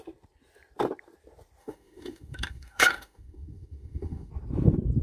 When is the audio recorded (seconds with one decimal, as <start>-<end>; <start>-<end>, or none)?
0.0-1.6; 4.3-5.0